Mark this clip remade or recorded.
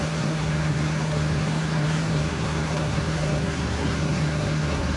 remade